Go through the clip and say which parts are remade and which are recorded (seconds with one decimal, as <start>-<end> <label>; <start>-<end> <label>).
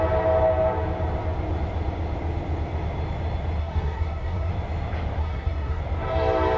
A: 0.0-3.6 recorded; 3.6-4.5 remade; 4.5-5.2 recorded; 5.2-5.8 remade; 5.8-6.6 recorded